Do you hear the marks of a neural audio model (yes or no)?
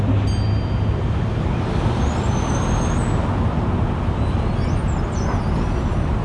no